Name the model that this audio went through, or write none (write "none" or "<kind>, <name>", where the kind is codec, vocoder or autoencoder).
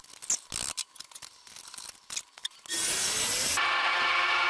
none